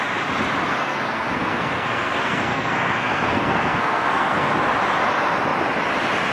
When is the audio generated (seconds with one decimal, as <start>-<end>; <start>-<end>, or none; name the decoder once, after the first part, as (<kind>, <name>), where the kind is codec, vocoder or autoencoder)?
0.7-4.5 (codec, SNAC)